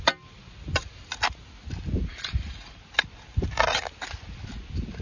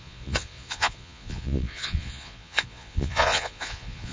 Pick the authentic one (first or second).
first